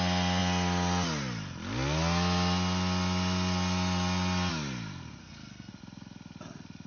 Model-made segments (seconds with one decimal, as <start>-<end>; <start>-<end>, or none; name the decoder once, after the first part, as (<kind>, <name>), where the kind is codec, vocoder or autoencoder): 5.2-5.7 (codec, SNAC)